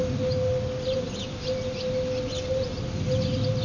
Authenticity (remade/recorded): recorded